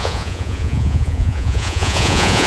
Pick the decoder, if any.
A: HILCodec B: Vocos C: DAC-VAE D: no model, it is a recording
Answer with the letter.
B